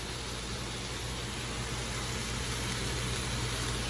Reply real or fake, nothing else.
real